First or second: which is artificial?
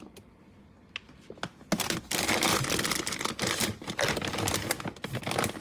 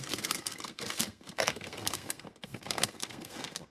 second